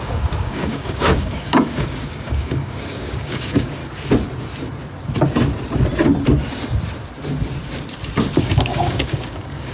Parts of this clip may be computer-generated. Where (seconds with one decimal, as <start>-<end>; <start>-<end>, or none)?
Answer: 0.0-3.8; 8.4-9.7